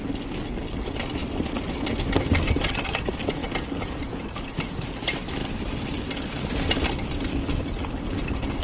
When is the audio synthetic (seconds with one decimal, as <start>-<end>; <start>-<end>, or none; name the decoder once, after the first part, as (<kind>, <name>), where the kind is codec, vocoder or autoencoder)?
none